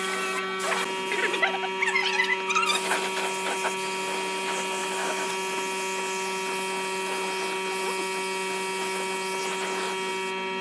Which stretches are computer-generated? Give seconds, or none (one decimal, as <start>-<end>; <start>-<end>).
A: 4.8-5.3